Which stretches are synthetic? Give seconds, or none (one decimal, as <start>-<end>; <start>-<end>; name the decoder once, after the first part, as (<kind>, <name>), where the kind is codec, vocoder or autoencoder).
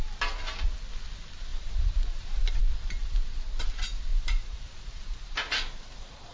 1.5-2.6 (vocoder, BigVGAN v2); 3.0-3.6; 4.1-6.3